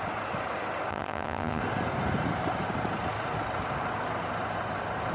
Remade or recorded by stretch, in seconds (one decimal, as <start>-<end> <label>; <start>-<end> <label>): 0.0-0.9 recorded; 0.9-1.6 remade; 1.6-5.1 recorded